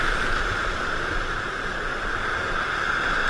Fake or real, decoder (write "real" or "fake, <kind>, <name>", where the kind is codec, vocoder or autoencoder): real